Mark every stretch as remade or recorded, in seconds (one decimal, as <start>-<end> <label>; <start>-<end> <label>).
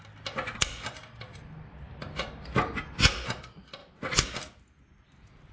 0.0-5.5 recorded